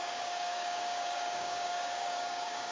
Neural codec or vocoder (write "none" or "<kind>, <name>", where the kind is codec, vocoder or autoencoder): codec, DAC